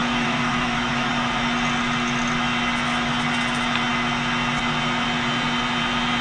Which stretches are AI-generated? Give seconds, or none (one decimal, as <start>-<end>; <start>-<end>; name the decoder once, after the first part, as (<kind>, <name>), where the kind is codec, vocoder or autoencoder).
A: 0.0-1.1 (autoencoder, DAC-VAE)